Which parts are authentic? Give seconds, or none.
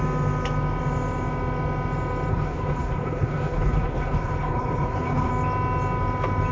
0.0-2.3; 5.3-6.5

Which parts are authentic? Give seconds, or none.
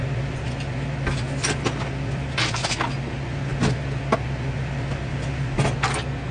0.0-6.3